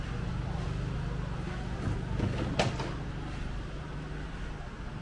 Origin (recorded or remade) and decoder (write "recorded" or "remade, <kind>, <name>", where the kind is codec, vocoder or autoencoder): recorded